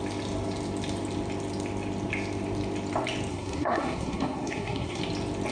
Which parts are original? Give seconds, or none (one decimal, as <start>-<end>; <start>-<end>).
0.0-3.3; 5.0-5.5